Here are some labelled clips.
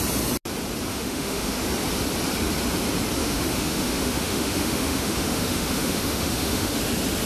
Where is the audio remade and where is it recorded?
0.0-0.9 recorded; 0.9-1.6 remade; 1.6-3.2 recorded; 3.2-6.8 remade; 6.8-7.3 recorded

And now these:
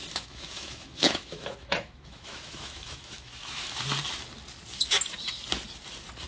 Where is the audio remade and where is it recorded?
0.0-3.8 remade; 3.8-6.3 recorded

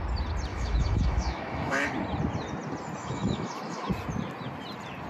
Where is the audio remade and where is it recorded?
0.0-0.5 recorded; 0.5-1.9 remade; 1.9-3.0 recorded; 3.0-3.9 remade; 3.9-5.1 recorded

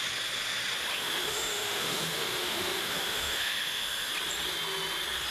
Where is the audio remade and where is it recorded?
0.0-0.9 recorded; 0.9-4.1 remade; 4.1-5.3 recorded

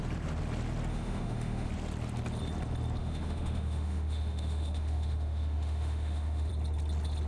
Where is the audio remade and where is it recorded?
0.0-0.9 recorded; 0.9-1.7 remade; 1.7-3.0 recorded; 3.0-6.5 remade; 6.5-7.3 recorded